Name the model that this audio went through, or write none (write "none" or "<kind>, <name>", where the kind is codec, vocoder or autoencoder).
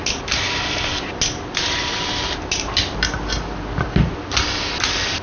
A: none